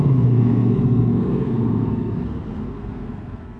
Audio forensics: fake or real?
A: fake